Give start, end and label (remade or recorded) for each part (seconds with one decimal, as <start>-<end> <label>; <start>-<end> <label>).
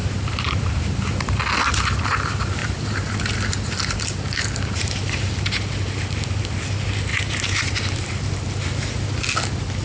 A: 0.0-1.0 remade; 1.0-2.6 recorded; 2.6-5.3 remade; 5.3-7.1 recorded; 7.1-8.7 remade; 8.7-9.8 recorded